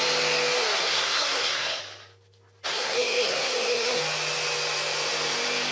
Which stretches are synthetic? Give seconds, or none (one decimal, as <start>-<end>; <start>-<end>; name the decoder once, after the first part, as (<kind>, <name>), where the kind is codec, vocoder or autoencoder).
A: 0.8-1.8 (codec, SNAC); 2.7-4.0